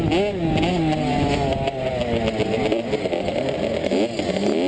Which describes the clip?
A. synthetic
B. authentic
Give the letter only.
B